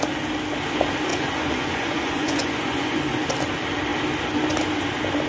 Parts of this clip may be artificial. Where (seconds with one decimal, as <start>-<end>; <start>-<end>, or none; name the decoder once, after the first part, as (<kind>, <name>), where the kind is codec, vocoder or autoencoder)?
1.1-3.0 (vocoder, Vocos)

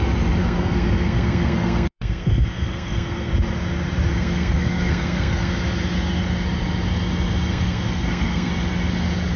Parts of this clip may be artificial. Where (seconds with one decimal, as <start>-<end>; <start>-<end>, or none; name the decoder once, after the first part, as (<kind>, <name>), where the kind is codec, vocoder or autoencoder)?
0.4-3.3 (codec, SNAC); 4.1-5.5; 7.5-8.5

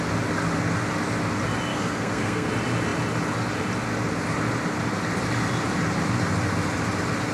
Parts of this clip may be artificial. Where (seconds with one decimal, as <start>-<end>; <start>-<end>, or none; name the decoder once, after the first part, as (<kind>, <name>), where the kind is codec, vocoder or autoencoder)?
1.7-2.5 (codec, SNAC)

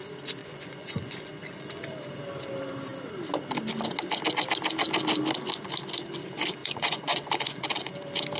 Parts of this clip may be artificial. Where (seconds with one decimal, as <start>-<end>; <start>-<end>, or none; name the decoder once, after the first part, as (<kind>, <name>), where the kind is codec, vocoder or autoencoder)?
0.4-1.8 (vocoder, Vocos); 6.6-7.6